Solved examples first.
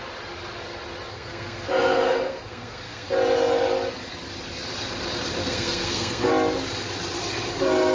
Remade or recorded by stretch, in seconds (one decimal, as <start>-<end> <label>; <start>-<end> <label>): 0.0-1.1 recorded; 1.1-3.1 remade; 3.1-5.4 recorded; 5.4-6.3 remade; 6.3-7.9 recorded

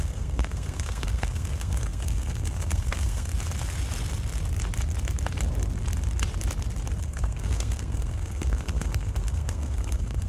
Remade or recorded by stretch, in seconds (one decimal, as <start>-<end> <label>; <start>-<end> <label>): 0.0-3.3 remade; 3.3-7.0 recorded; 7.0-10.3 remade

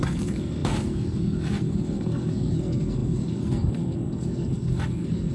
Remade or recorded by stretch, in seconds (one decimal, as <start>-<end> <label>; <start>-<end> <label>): 0.0-5.3 remade